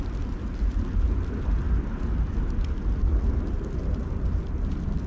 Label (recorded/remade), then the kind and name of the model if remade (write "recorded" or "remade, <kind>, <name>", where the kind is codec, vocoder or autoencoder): recorded